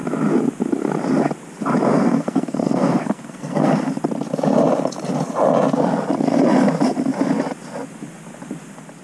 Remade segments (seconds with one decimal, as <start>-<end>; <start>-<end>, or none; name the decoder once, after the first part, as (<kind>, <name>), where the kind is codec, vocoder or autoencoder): 1.9-3.9 (codec, SNAC)